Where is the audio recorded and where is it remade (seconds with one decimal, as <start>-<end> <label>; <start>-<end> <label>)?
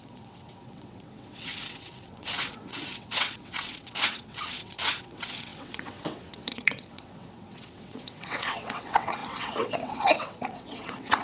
0.0-11.2 remade